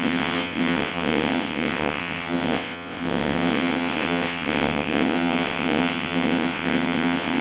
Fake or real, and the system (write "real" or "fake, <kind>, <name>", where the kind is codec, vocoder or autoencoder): fake, vocoder, WaveNeXt